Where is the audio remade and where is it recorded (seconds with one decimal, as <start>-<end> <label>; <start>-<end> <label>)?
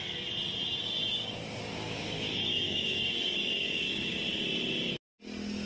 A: 0.0-0.8 recorded; 0.8-4.2 remade; 4.2-5.7 recorded